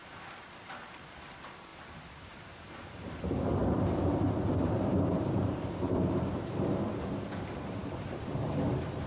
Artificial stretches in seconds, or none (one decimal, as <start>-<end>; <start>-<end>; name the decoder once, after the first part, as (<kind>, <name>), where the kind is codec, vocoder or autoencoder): 0.0-9.1 (vocoder, BigVGAN v2)